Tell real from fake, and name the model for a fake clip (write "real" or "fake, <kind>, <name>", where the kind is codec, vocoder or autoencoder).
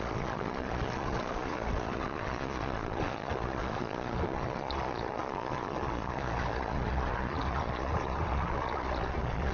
fake, vocoder, Vocos